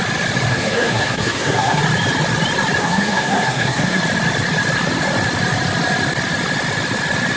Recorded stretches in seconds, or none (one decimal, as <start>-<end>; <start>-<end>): 0.0-0.5; 1.8-2.8; 4.0-7.4